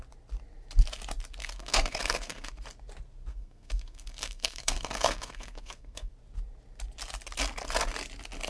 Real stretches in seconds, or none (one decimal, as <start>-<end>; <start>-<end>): 0.0-1.4; 2.5-3.3; 6.1-8.5